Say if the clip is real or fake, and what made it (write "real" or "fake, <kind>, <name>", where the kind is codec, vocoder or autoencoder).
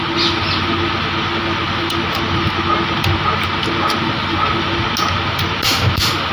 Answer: real